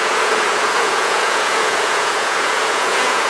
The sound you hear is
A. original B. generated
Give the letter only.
B